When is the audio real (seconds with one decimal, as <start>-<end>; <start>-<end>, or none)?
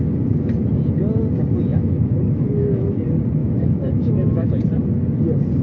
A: 0.0-1.7; 2.9-3.4; 4.5-5.6